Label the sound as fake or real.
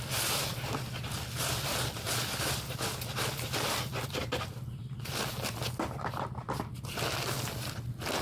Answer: real